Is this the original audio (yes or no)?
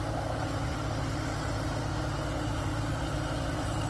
yes